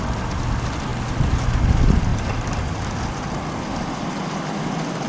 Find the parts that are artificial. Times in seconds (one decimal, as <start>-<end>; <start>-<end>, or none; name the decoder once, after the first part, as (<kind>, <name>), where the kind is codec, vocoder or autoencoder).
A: 2.1-4.6 (vocoder, BigVGAN v2)